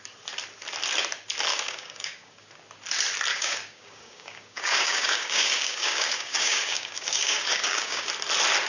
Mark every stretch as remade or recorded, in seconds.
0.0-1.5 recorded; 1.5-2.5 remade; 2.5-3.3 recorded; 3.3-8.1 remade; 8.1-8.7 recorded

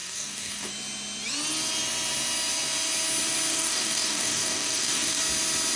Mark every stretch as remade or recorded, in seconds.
0.0-0.7 remade; 0.7-3.5 recorded; 3.5-5.2 remade; 5.2-5.8 recorded

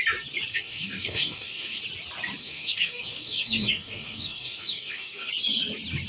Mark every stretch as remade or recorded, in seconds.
0.0-0.5 recorded; 0.5-1.8 remade; 1.8-2.4 recorded; 2.4-5.3 remade; 5.3-6.1 recorded

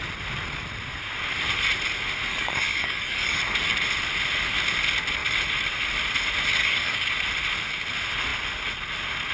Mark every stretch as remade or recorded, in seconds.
0.0-2.3 recorded; 2.3-3.4 remade; 3.4-6.6 recorded; 6.6-7.1 remade; 7.1-9.3 recorded

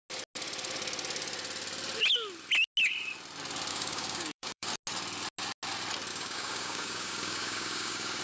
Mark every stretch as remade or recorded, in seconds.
0.0-3.7 recorded; 3.7-4.7 remade; 4.7-6.1 recorded; 6.1-8.2 remade

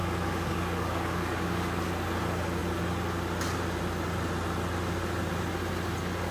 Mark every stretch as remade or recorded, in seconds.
0.0-1.9 remade; 1.9-6.3 recorded

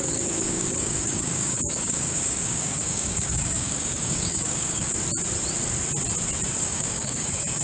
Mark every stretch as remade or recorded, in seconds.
0.0-4.9 remade; 4.9-6.6 recorded; 6.6-7.6 remade